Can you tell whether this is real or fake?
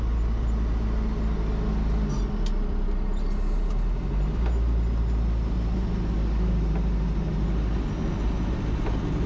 real